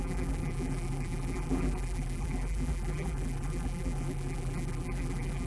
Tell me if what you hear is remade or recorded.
remade